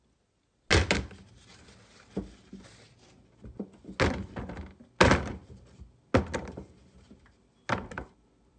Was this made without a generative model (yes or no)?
yes